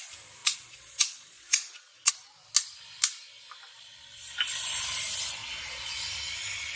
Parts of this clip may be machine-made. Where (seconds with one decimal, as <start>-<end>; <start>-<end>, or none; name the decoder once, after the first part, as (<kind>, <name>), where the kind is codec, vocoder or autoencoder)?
0.4-2.1 (vocoder, Vocos); 5.4-6.0